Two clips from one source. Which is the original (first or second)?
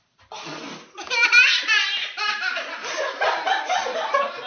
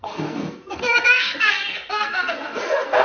first